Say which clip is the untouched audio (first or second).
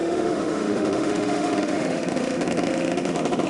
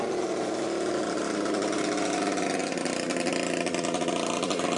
second